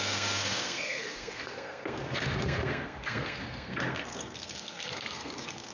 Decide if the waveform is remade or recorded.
remade